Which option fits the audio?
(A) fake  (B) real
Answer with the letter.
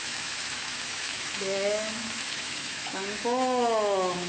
A